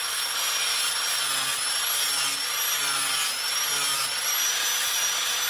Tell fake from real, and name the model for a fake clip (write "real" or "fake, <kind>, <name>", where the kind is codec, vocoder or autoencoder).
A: real